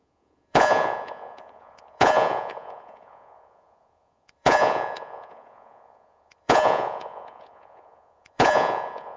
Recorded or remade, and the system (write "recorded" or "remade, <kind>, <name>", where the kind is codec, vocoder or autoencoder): remade, vocoder, Vocos